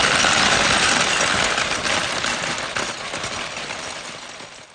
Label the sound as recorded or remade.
recorded